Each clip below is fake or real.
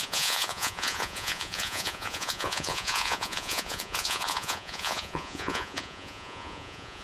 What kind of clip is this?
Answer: fake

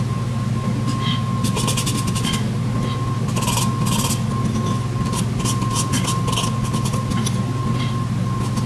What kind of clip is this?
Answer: real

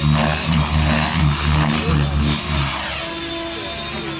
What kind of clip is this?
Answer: real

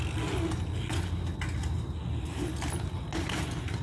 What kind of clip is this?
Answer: real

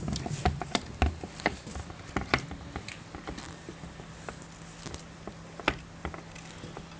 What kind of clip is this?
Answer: real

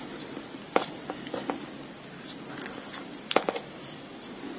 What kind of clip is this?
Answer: real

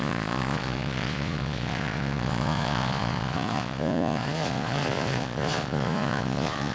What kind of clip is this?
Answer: fake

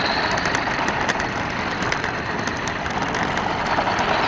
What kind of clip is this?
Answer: real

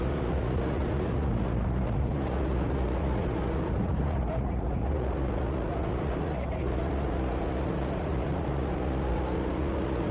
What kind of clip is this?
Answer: fake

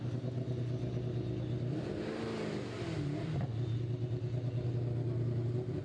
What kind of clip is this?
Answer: real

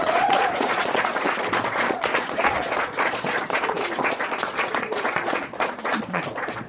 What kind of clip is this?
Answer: fake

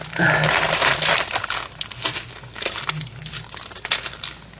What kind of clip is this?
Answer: real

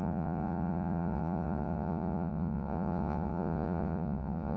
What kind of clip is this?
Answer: fake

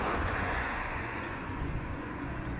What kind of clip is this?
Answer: fake